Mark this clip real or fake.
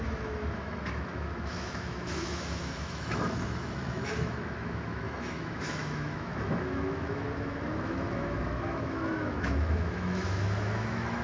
fake